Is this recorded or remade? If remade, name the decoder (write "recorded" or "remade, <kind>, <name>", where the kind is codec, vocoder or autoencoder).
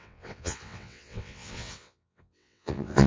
remade, vocoder, WaveNeXt